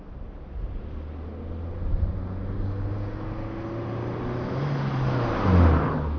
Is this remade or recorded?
recorded